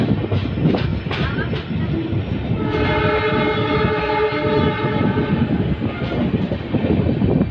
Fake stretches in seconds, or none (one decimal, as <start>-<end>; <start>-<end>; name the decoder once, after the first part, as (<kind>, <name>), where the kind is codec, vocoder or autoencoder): none